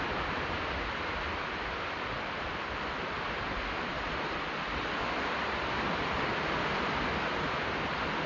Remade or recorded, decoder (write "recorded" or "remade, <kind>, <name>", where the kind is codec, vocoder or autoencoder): recorded